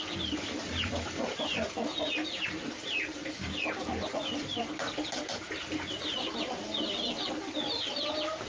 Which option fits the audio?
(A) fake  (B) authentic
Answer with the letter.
B